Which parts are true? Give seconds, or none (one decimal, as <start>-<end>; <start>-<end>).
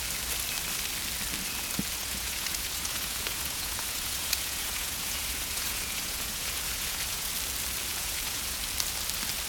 0.0-2.0; 7.3-7.9; 8.6-9.5